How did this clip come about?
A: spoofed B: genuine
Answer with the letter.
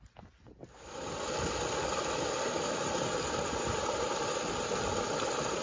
B